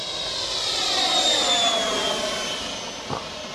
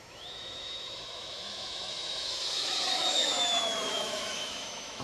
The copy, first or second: second